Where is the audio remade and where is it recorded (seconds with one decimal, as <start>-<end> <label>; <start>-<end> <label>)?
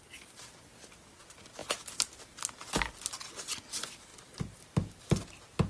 0.0-4.1 recorded; 4.1-4.7 remade; 4.7-5.7 recorded